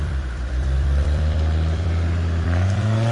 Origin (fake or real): fake